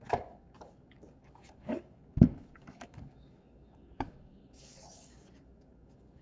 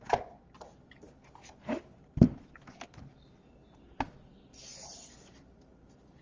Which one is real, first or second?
second